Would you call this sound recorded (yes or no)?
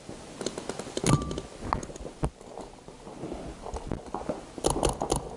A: yes